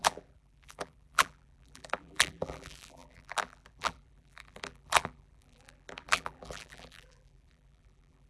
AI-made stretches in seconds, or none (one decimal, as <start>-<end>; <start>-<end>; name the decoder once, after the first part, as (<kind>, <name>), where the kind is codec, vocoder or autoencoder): 0.0-8.3 (vocoder, BigVGAN v2)

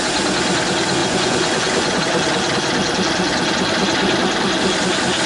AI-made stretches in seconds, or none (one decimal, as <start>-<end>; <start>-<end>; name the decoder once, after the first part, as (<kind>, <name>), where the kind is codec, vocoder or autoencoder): 1.0-2.0 (vocoder, Vocos)

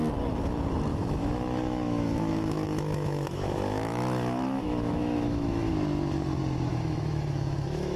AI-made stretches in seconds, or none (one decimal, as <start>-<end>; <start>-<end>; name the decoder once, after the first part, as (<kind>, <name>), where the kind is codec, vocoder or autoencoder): 0.9-5.7 (autoencoder, DAC-VAE); 6.7-8.0

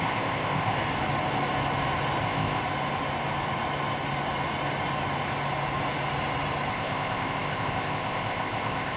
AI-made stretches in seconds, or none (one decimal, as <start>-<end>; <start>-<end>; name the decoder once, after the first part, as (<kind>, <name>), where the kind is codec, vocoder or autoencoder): 0.0-0.8 (codec, ZipCodec); 2.2-2.6; 6.7-9.0